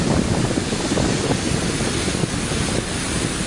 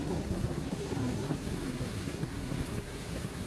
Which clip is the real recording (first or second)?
first